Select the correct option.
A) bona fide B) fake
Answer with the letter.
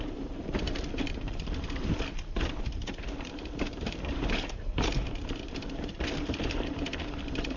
B